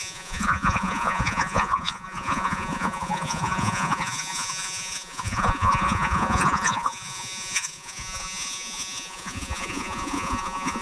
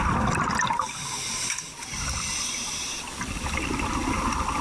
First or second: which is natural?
second